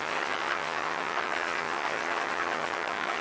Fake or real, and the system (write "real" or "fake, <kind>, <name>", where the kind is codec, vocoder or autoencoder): fake, vocoder, HiFi-GAN